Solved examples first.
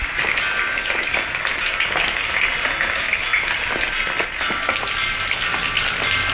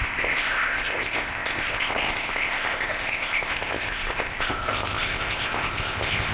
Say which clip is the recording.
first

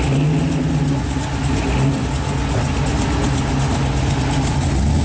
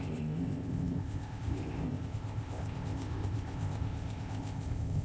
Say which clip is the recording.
first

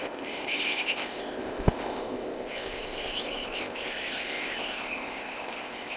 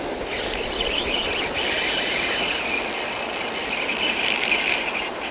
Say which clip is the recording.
second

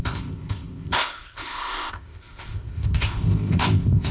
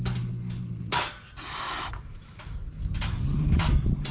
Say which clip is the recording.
second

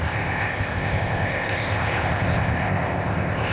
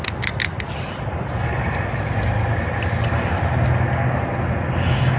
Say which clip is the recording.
second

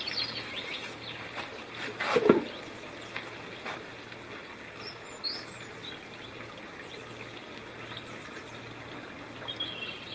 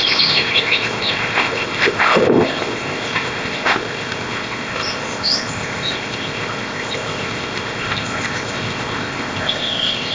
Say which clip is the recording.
first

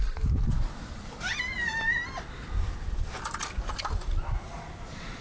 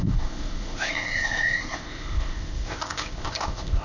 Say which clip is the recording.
first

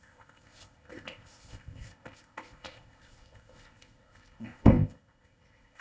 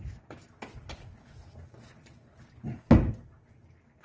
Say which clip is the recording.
second